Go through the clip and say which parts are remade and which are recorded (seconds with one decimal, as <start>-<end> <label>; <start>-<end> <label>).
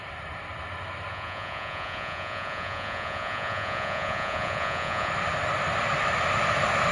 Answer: 0.0-1.1 recorded; 1.1-5.1 remade; 5.1-6.9 recorded